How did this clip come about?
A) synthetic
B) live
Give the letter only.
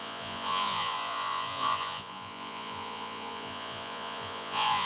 A